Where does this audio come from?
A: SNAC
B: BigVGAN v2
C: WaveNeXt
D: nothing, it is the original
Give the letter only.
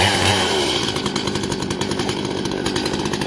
B